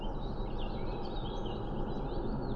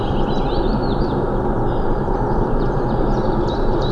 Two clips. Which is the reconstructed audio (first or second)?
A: second